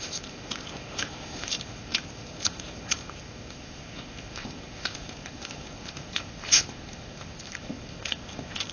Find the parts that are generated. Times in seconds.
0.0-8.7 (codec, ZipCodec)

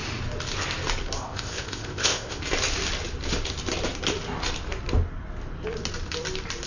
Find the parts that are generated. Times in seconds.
1.2-2.4 (codec, ZipCodec)

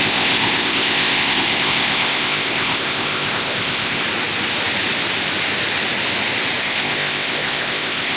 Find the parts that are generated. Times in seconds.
0.0-4.0 (codec, ZipCodec); 6.6-8.2

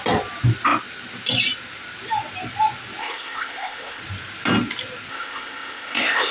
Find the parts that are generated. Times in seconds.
3.0-4.0 (codec, ZipCodec); 5.1-6.3

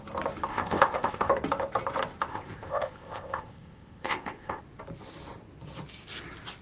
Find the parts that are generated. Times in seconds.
0.5-1.3 (codec, ZipCodec); 2.3-4.6

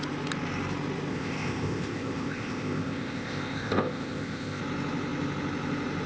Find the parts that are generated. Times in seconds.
1.1-4.6 (codec, ZipCodec)